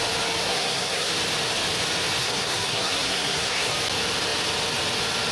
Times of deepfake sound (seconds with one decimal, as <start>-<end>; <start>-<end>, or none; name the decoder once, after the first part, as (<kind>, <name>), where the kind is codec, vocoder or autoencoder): 0.4-1.1 (codec, SNAC); 2.2-3.7